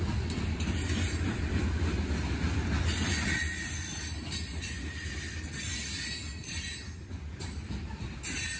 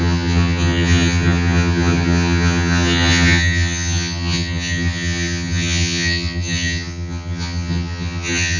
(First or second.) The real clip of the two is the first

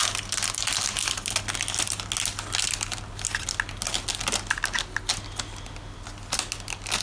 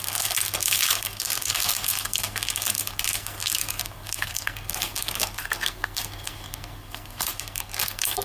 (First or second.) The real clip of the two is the first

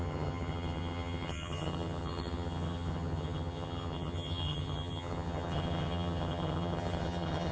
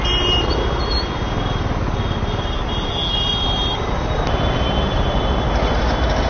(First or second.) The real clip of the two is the second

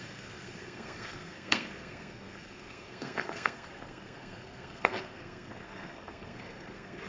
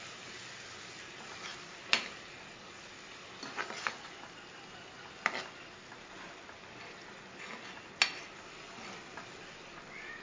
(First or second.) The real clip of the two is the second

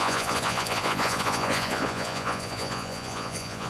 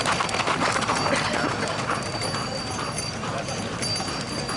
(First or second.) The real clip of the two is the second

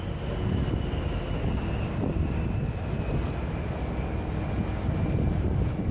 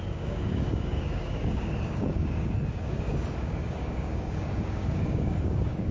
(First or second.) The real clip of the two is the first